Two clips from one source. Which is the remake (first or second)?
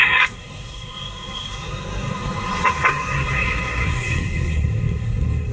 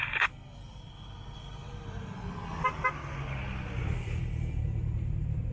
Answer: first